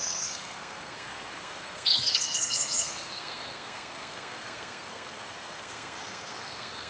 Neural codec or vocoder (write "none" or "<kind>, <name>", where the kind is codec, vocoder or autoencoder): codec, SNAC